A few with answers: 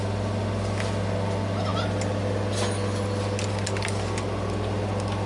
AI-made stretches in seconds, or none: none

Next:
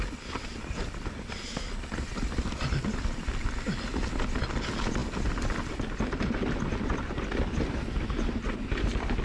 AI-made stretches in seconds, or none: none

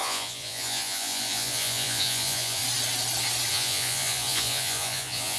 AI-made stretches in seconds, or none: 0.0-2.6 (vocoder, Vocos); 3.5-5.4

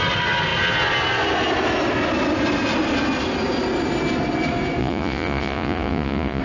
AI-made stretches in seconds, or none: 4.8-6.4 (vocoder, Vocos)

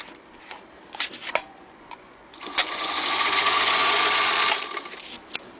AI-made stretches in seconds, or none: 1.2-4.3 (vocoder, Vocos)

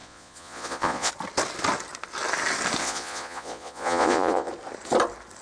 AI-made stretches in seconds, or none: 0.0-1.1 (vocoder, Vocos); 2.8-4.5

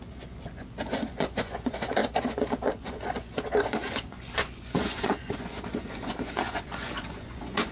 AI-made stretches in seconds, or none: 0.0-7.7 (vocoder, Vocos)

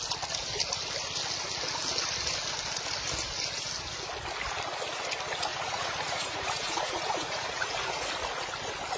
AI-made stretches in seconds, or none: 5.5-8.1 (vocoder, Vocos)